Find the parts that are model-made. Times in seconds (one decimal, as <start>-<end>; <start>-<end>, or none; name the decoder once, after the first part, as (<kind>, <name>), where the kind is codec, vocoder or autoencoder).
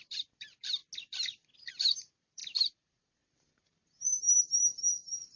0.0-0.8 (vocoder, BigVGAN v2); 1.7-5.4